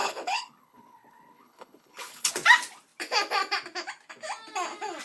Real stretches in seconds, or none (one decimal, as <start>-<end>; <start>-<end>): 2.3-5.0